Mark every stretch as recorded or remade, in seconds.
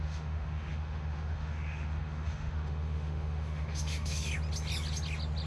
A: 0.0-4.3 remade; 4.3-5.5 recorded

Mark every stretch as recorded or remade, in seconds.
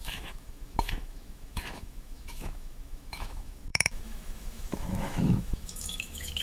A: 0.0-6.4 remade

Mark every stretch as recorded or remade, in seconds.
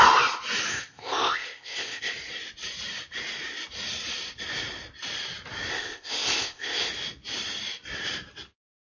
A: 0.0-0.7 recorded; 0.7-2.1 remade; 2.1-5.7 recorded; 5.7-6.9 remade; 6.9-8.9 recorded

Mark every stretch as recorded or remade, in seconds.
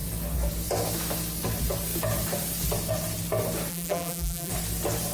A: 0.0-3.7 recorded; 3.7-4.5 remade; 4.5-5.1 recorded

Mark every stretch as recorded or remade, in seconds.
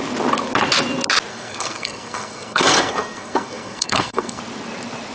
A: 0.0-1.3 recorded; 1.3-4.4 remade; 4.4-5.1 recorded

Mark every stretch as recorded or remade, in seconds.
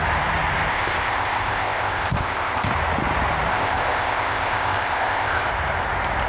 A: 0.0-0.7 recorded; 0.7-2.7 remade; 2.7-3.5 recorded; 3.5-5.5 remade; 5.5-6.3 recorded